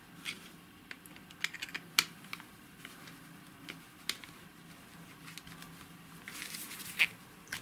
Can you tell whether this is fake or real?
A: real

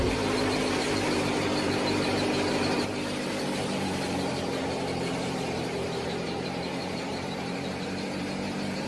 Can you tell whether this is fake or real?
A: fake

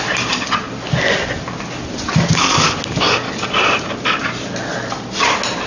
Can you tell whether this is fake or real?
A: real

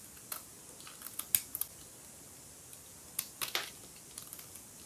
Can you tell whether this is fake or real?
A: real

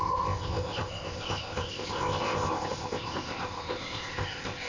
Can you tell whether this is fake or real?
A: fake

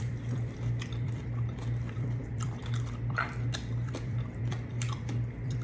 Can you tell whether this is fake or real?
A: fake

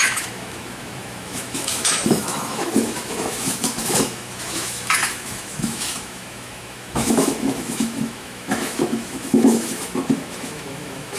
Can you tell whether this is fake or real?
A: fake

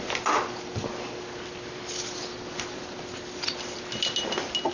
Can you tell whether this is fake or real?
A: real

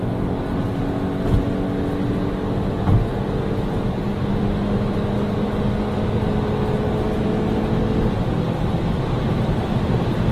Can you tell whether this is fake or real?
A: real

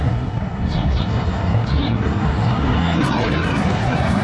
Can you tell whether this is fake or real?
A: fake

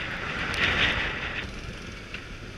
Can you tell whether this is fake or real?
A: real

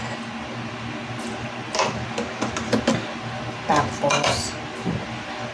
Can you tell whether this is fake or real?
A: real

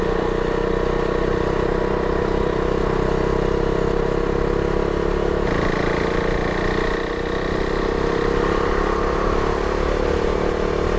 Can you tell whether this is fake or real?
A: real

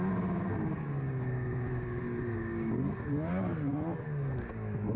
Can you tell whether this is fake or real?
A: real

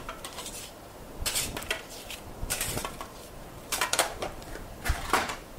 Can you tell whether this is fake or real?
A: fake